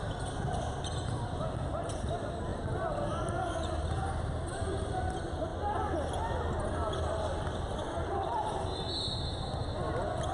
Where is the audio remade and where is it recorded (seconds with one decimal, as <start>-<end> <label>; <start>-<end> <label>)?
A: 0.0-4.6 recorded; 4.6-5.1 remade; 5.1-5.5 recorded; 5.5-8.2 remade; 8.2-10.3 recorded